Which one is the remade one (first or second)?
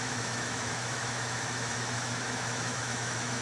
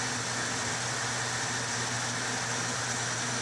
first